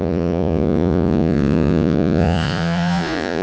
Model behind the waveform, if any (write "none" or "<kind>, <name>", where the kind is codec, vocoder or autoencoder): vocoder, Vocos